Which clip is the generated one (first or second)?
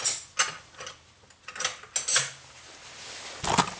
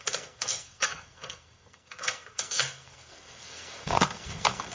second